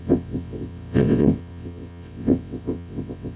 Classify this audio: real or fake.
fake